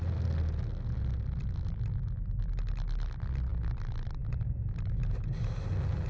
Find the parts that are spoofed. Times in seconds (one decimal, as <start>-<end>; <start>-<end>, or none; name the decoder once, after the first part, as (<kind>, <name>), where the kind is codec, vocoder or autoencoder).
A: none